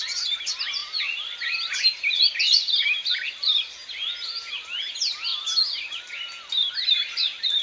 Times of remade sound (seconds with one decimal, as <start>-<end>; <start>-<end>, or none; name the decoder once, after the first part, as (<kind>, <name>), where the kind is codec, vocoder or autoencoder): 0.8-2.7 (vocoder, BigVGAN v2)